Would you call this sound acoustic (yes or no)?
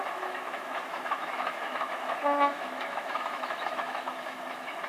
no